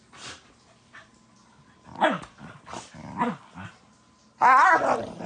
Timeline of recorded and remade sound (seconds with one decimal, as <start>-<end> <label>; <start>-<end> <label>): 0.0-5.3 recorded